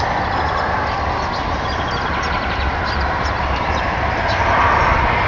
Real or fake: real